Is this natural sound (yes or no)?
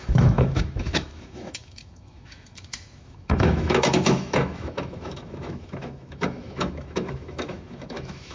no